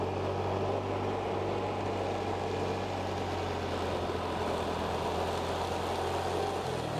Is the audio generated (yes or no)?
no